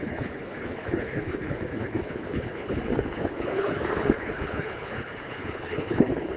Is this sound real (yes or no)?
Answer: no